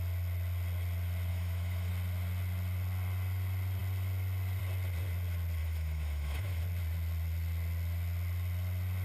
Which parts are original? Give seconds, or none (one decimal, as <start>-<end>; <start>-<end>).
0.0-1.3; 1.9-5.6; 6.6-9.0